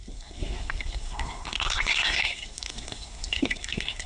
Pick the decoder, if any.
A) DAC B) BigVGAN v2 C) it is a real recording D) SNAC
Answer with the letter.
D